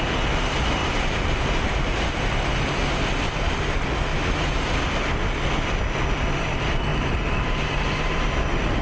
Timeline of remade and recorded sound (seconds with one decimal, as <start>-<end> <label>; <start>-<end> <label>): 0.0-0.8 recorded; 0.8-1.9 remade; 1.9-6.9 recorded; 6.9-8.2 remade; 8.2-8.8 recorded